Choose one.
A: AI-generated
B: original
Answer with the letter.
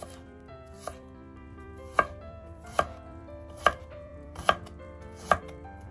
A